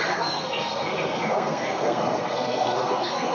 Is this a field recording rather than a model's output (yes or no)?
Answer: no